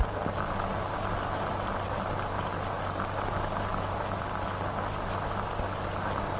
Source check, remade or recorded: recorded